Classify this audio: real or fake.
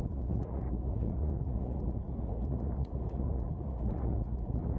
fake